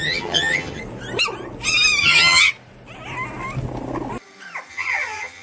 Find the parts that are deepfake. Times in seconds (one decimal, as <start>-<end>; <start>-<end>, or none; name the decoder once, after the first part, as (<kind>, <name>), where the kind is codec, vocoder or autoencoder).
0.0-0.8 (vocoder, HiFi-GAN); 2.0-2.5; 4.7-5.4